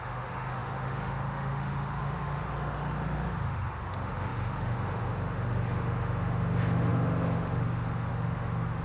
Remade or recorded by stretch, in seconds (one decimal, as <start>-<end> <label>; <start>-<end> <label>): 0.0-8.8 remade